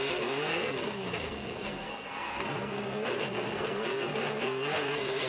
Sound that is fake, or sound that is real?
fake